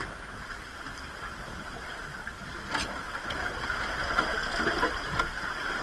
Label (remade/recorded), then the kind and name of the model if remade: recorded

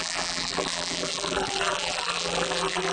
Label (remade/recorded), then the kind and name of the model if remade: remade, vocoder, BigVGAN v2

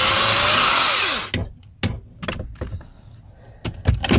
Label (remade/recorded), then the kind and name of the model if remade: recorded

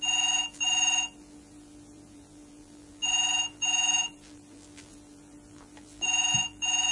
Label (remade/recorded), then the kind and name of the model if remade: remade, vocoder, BigVGAN v2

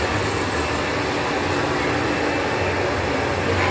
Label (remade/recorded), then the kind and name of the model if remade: recorded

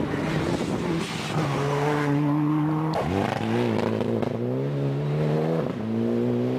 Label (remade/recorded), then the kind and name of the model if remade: recorded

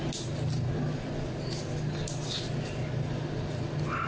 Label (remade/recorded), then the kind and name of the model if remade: recorded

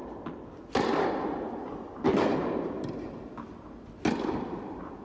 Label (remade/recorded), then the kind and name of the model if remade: recorded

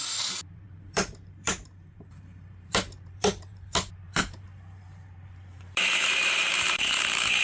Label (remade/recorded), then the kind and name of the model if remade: remade, vocoder, BigVGAN v2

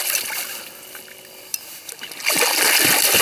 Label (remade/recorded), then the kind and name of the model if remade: recorded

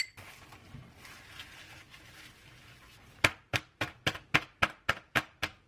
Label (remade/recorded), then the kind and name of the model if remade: recorded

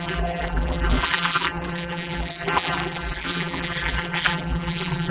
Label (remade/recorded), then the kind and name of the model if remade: remade, vocoder, BigVGAN v2